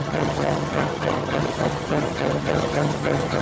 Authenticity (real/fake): fake